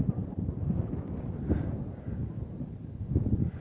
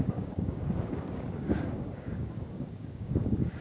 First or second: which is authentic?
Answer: first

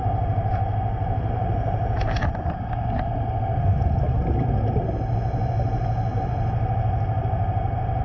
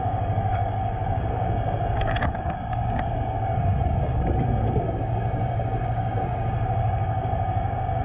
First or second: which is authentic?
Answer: first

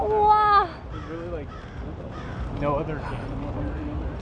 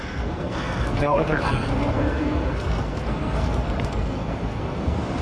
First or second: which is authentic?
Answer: first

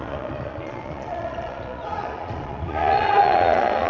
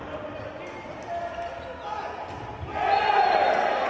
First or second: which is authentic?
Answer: second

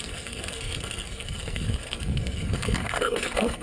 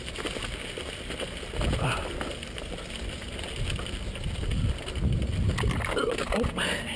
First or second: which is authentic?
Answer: second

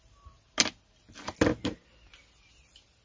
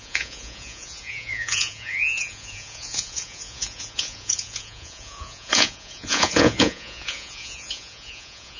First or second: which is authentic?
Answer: first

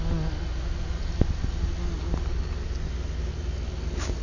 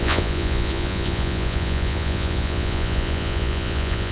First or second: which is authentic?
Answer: first